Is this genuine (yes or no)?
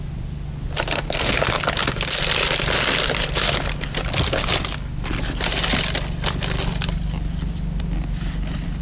yes